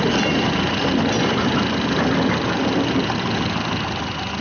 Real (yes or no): yes